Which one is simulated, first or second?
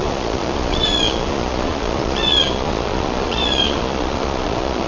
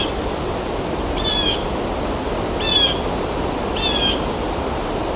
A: first